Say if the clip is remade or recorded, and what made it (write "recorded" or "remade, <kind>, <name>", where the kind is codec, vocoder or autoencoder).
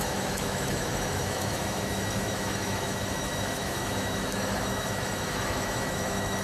remade, autoencoder, DAC-VAE